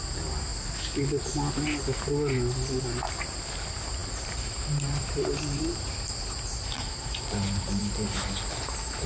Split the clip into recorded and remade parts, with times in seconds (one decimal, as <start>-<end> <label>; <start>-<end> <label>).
0.0-0.5 remade; 0.5-2.8 recorded; 2.8-7.8 remade; 7.8-8.6 recorded; 8.6-9.1 remade